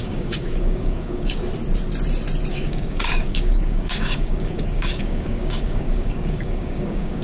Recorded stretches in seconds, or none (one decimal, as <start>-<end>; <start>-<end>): 1.5-2.5